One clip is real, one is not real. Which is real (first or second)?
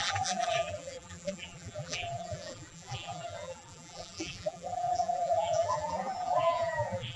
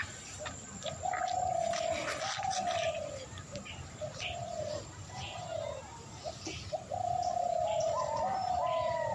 second